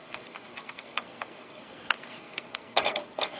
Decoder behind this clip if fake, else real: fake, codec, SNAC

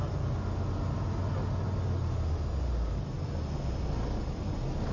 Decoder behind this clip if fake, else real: real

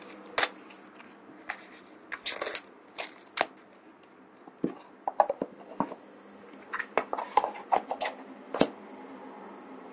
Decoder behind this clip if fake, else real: real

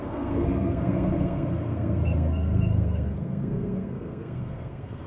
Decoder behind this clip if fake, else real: fake, codec, SNAC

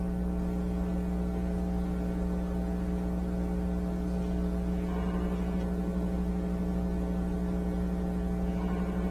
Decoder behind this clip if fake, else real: real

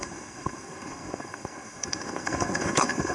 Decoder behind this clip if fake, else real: fake, codec, SNAC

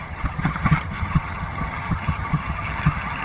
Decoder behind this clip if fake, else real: fake, vocoder, HiFi-GAN